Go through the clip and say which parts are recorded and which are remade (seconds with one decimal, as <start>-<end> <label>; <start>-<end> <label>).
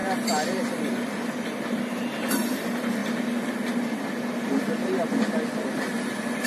0.0-0.6 recorded; 0.6-3.0 remade; 3.0-6.1 recorded; 6.1-6.5 remade